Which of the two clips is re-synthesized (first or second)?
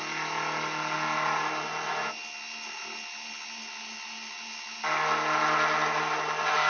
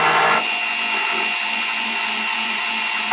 second